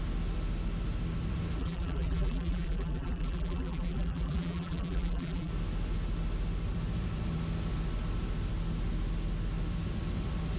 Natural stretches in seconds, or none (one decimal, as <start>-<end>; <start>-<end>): 0.0-1.6; 5.5-10.6